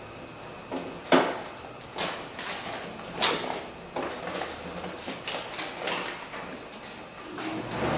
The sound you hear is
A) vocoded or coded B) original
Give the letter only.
B